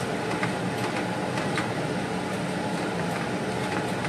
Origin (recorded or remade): recorded